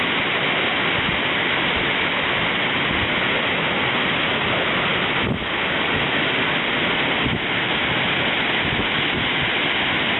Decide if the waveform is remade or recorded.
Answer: recorded